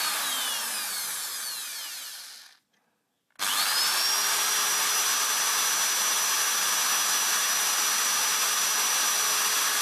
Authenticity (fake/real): real